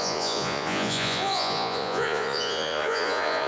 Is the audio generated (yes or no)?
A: yes